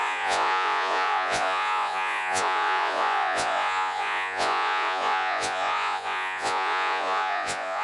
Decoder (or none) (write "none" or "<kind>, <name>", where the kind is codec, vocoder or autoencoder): vocoder, Vocos